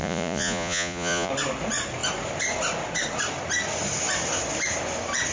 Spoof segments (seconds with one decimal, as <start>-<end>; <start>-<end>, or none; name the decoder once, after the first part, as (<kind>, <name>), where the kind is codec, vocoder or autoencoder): 0.0-1.3 (vocoder, Vocos)